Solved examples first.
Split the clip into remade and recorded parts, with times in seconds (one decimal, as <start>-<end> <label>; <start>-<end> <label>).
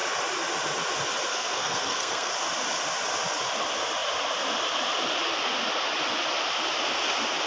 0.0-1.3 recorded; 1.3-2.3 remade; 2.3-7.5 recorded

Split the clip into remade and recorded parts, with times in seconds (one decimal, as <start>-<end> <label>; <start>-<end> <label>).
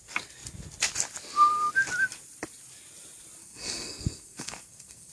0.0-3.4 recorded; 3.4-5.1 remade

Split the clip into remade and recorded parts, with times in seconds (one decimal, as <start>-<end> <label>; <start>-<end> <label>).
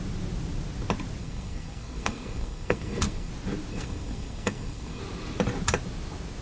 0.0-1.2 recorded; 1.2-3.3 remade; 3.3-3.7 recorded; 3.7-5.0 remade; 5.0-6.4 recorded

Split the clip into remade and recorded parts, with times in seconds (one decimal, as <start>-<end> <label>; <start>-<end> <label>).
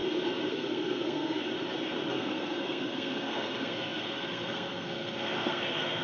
0.0-0.5 recorded; 0.5-1.5 remade; 1.5-2.1 recorded; 2.1-6.0 remade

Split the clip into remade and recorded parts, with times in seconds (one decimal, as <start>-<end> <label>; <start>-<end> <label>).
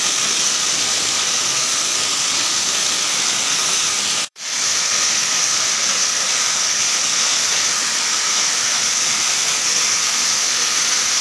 0.0-11.2 remade